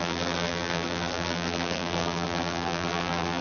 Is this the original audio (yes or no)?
no